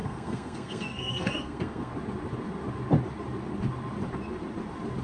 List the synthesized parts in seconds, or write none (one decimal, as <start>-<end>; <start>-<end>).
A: 0.0-1.9